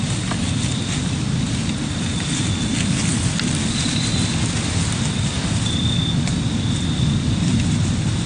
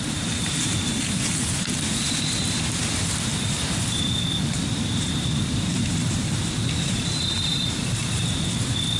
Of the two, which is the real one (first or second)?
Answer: first